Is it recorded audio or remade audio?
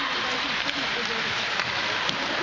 recorded